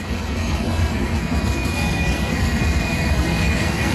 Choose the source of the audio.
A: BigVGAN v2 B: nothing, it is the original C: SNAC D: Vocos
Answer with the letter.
C